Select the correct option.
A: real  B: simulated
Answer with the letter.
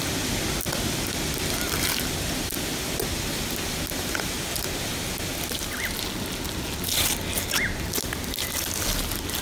A